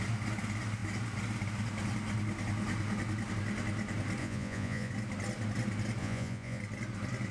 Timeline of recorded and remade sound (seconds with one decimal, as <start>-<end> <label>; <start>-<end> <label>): 0.0-4.2 recorded; 4.2-4.9 remade; 4.9-6.0 recorded; 6.0-6.6 remade; 6.6-7.3 recorded